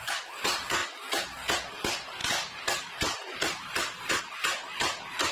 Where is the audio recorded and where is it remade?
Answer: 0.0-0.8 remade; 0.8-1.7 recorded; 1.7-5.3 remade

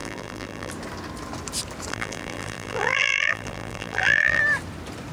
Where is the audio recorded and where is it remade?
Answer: 0.0-0.7 remade; 0.7-1.9 recorded; 1.9-4.4 remade; 4.4-5.1 recorded

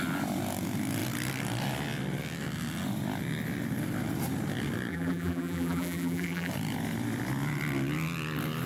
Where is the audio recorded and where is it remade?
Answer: 0.0-4.9 recorded; 4.9-6.5 remade; 6.5-8.7 recorded

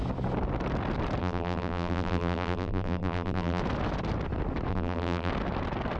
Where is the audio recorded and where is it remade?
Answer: 0.0-1.2 recorded; 1.2-3.6 remade; 3.6-4.7 recorded; 4.7-5.3 remade; 5.3-6.0 recorded